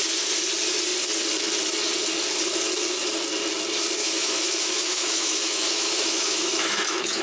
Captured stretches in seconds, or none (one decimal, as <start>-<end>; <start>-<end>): 0.0-4.0